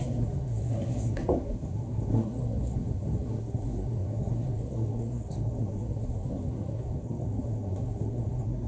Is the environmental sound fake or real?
fake